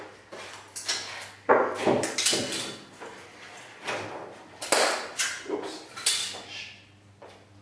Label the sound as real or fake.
real